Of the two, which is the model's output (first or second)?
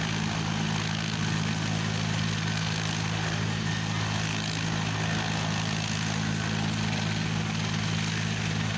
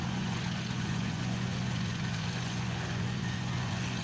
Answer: second